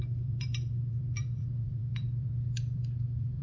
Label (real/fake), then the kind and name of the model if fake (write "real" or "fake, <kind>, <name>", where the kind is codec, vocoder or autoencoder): fake, vocoder, BigVGAN v2